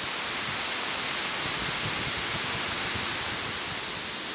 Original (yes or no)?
yes